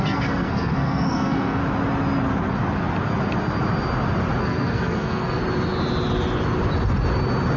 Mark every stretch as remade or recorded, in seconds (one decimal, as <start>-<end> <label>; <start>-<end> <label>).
0.0-1.6 remade; 1.6-4.4 recorded; 4.4-5.4 remade; 5.4-7.6 recorded

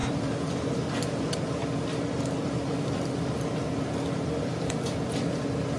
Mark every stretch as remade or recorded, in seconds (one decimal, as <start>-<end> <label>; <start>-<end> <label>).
0.0-0.6 remade; 0.6-1.6 recorded; 1.6-3.9 remade; 3.9-5.8 recorded

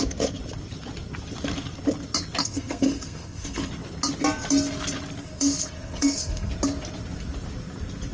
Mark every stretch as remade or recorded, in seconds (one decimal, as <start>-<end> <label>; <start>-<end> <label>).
0.0-2.4 recorded; 2.4-3.7 remade; 3.7-5.2 recorded; 5.2-6.5 remade; 6.5-8.1 recorded